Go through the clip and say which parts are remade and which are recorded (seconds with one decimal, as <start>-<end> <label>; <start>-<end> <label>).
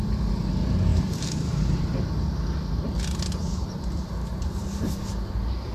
0.0-0.9 recorded; 0.9-1.8 remade; 1.8-3.4 recorded; 3.4-4.8 remade; 4.8-5.7 recorded